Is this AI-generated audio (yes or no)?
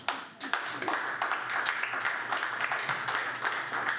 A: no